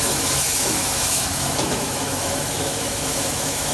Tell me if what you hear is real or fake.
fake